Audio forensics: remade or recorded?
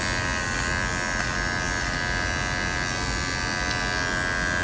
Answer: recorded